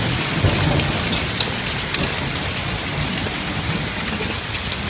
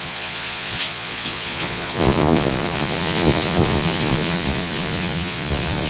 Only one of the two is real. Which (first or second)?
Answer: first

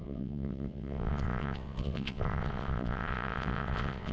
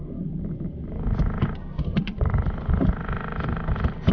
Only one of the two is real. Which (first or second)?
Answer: second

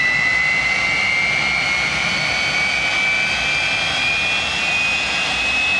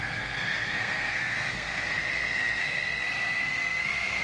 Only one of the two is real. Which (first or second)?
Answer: first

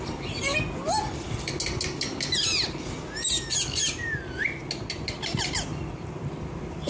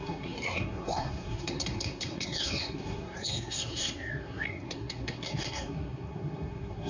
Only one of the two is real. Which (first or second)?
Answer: first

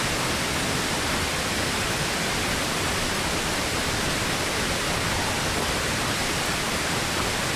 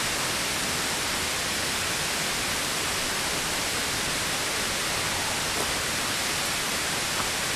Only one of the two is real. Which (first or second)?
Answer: second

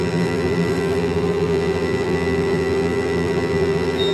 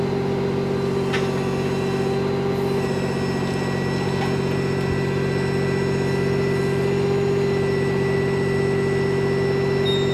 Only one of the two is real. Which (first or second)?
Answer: second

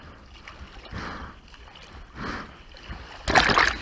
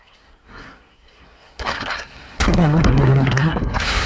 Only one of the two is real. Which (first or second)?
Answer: first